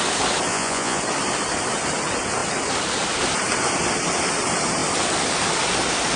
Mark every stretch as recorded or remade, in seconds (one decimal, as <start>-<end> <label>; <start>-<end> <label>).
0.0-0.5 recorded; 0.5-1.0 remade; 1.0-6.2 recorded